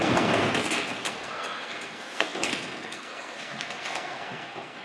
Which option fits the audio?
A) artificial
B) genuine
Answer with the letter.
A